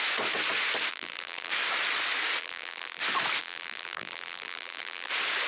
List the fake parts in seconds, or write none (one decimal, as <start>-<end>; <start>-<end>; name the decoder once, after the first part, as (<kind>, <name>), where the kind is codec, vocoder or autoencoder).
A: 0.9-1.5 (vocoder, BigVGAN v2); 2.4-3.0; 3.4-5.1